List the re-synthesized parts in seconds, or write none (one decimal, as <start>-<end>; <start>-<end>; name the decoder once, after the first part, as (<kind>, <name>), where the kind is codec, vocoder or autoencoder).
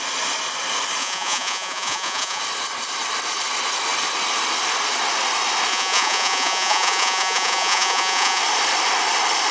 1.0-2.4 (vocoder, Vocos); 5.7-8.4